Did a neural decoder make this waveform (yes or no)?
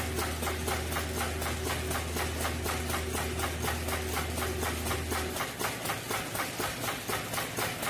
no